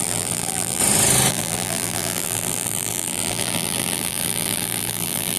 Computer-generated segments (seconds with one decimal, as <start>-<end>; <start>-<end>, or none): 0.0-0.8; 1.3-5.4